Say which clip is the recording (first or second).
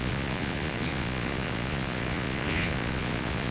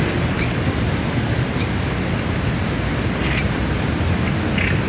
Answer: second